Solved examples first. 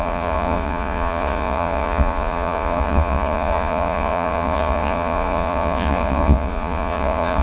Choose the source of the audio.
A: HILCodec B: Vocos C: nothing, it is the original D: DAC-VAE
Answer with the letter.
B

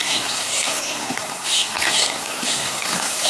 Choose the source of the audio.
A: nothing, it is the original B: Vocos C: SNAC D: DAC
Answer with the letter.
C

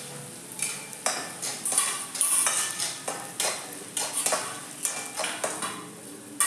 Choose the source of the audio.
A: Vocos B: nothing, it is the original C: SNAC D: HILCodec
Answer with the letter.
B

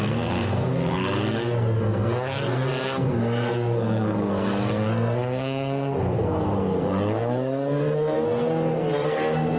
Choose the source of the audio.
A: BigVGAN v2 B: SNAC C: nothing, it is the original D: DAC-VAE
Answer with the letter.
B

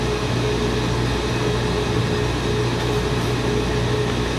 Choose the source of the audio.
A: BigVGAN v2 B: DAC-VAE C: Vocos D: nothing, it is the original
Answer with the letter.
D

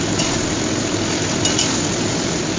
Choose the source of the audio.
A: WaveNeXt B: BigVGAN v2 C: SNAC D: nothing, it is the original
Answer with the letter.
D